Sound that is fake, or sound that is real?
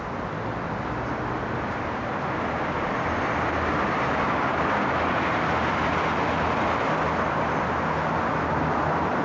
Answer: real